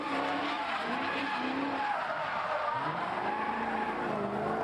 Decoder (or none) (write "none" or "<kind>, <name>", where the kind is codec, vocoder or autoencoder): none